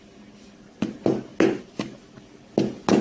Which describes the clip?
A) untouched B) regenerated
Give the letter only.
A